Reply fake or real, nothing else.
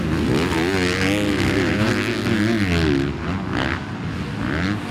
real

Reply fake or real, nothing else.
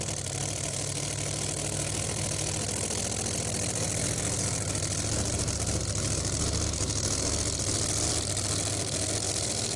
real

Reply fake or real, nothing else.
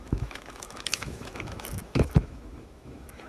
fake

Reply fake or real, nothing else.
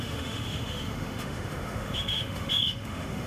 fake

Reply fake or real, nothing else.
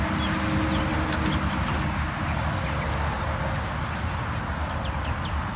real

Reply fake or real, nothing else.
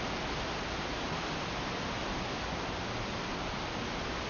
real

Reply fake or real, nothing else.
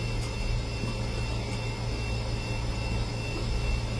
real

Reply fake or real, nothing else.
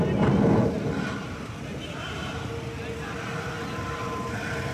real